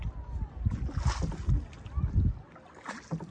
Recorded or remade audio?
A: recorded